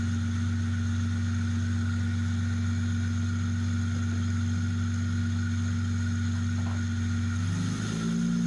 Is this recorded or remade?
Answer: recorded